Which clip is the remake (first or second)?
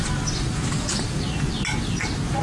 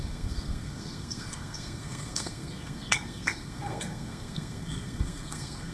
second